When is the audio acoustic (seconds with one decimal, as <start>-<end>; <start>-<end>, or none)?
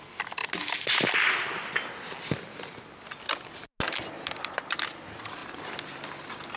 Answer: 0.0-6.6